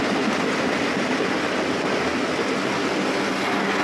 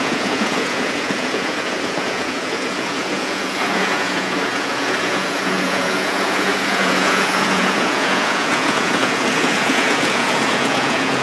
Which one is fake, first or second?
second